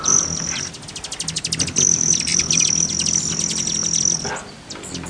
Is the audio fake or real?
real